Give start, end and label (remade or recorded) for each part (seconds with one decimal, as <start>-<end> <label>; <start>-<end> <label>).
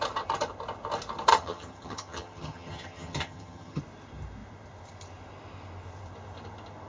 0.0-1.3 recorded; 1.3-3.8 remade; 3.8-6.9 recorded